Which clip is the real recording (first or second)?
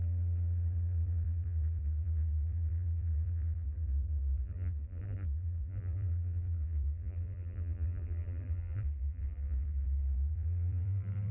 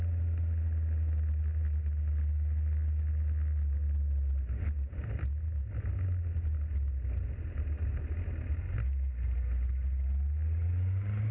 second